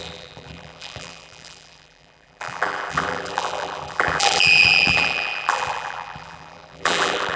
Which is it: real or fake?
fake